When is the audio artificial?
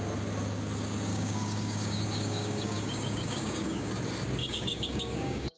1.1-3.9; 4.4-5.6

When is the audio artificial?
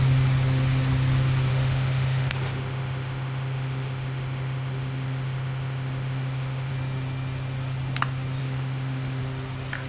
1.5-6.7; 8.4-9.2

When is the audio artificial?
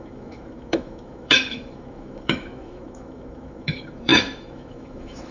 0.0-5.3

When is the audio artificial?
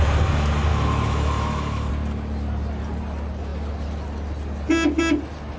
0.7-1.9